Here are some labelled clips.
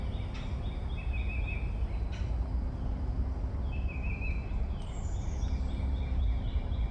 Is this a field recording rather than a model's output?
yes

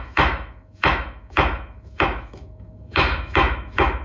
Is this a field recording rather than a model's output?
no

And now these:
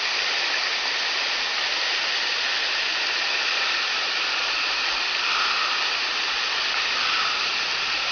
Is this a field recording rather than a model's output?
yes